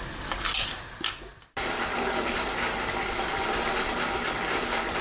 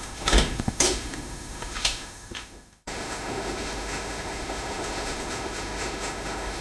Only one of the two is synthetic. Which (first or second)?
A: second